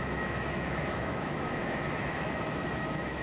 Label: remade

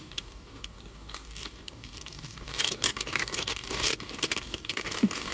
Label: remade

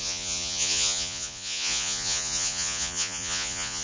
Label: remade